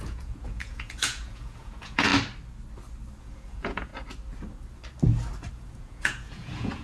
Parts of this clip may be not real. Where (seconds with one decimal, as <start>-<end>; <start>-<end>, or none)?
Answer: 0.0-2.1; 3.2-3.9; 5.5-6.8